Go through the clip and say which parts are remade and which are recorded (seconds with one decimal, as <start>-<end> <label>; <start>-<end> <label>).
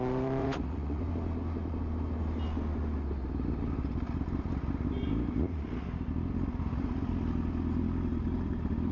0.0-0.4 recorded; 0.4-1.0 remade; 1.0-8.9 recorded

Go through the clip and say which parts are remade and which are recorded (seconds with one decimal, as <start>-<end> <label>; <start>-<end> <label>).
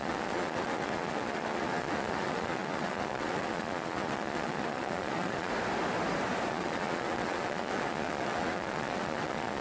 0.0-5.5 remade; 5.5-6.5 recorded; 6.5-9.6 remade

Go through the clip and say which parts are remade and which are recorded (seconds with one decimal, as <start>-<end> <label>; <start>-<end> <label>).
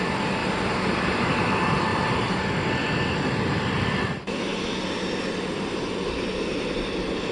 0.0-0.4 recorded; 0.4-1.5 remade; 1.5-1.9 recorded; 1.9-2.4 remade; 2.4-7.3 recorded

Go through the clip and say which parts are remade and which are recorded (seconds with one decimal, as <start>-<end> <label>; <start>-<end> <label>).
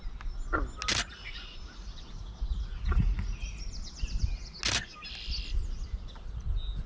0.0-1.2 recorded; 1.2-3.6 remade; 3.6-6.9 recorded